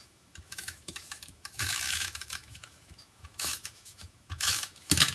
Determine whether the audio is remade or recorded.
remade